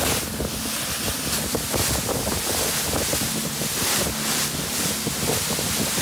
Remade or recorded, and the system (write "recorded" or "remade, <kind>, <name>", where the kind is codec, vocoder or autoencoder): recorded